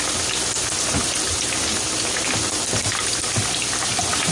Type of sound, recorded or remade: recorded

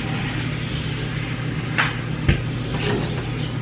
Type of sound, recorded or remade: recorded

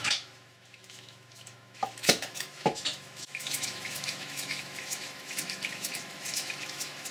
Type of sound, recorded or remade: remade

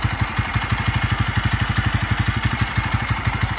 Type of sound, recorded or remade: recorded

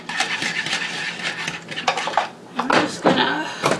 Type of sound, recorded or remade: recorded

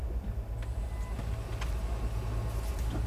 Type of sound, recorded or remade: recorded